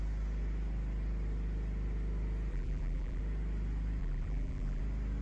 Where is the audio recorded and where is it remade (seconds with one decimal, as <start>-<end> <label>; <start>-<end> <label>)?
0.0-2.5 recorded; 2.5-3.2 remade; 3.2-4.0 recorded; 4.0-4.8 remade; 4.8-5.2 recorded